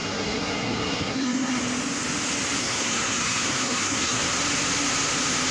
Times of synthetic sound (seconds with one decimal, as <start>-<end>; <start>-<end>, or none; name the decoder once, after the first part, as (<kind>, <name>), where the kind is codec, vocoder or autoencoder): 0.0-1.6 (codec, SNAC); 2.6-4.2